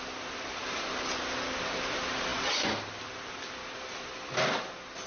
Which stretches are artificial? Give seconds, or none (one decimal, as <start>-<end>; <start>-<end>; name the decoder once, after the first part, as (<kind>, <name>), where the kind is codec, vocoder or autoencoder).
none

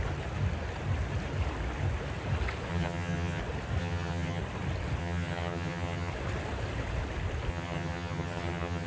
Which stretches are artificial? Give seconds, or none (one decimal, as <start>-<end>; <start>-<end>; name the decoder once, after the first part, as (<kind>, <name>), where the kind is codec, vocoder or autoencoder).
2.7-3.4 (vocoder, HiFi-GAN); 3.8-4.4; 5.0-6.1; 7.5-8.9